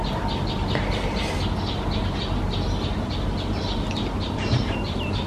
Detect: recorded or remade recorded